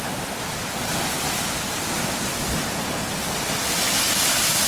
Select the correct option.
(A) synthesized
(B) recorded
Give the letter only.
B